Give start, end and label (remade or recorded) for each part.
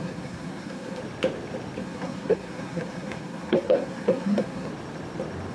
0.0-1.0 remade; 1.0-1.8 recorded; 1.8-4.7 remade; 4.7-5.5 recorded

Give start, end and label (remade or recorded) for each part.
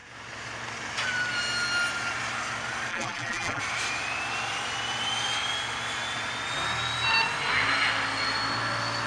0.0-2.9 recorded; 2.9-3.6 remade; 3.6-9.1 recorded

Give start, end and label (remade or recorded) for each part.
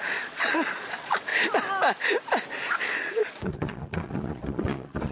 0.0-1.3 remade; 1.3-2.8 recorded; 2.8-5.1 remade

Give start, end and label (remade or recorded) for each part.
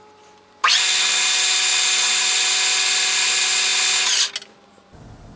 0.0-5.4 recorded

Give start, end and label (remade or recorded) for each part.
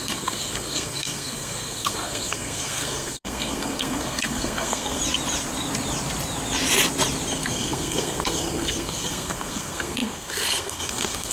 0.0-5.0 remade; 5.0-7.3 recorded; 7.3-11.3 remade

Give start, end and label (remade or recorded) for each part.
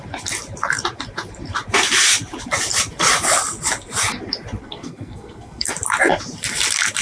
0.0-4.6 recorded; 4.6-5.7 remade; 5.7-7.0 recorded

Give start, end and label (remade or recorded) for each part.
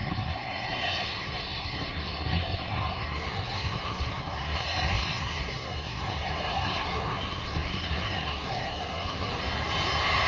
0.0-9.3 remade; 9.3-10.3 recorded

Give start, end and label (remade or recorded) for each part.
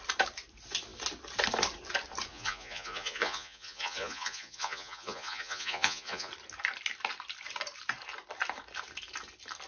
0.0-2.3 recorded; 2.3-6.3 remade; 6.3-9.7 recorded